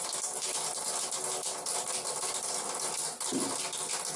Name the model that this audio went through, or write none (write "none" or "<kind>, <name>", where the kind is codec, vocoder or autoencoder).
none